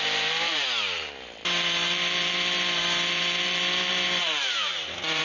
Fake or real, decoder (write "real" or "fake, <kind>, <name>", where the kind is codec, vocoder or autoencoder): fake, vocoder, BigVGAN v2